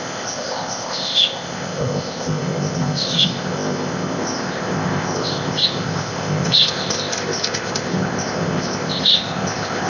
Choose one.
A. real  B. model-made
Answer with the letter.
B